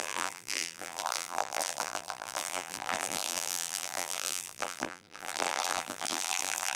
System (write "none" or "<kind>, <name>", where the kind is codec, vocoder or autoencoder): vocoder, BigVGAN v2